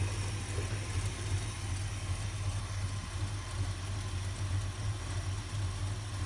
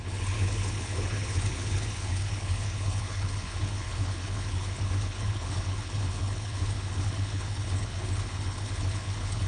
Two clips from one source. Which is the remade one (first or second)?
second